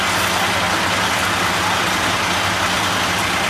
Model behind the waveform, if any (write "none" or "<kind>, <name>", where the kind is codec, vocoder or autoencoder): none